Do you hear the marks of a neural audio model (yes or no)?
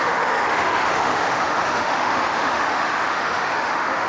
yes